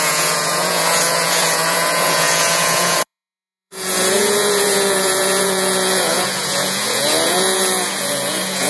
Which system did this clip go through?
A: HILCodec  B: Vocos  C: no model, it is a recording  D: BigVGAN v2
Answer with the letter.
B